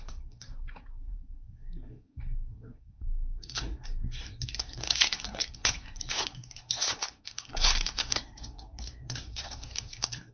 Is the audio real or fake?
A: fake